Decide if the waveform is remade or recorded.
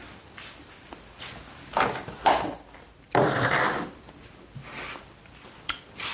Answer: recorded